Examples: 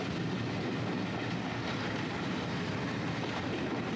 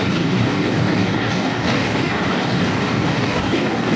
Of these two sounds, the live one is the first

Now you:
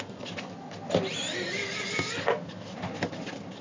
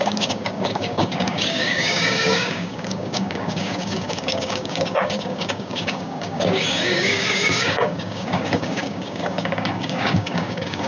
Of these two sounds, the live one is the first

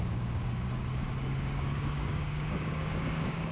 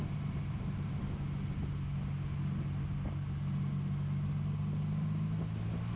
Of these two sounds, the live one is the second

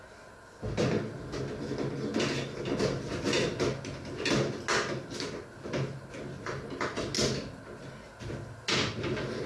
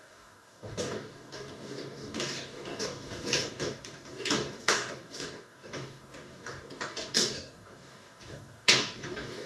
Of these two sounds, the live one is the first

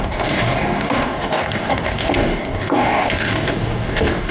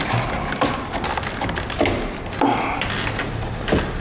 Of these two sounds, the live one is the second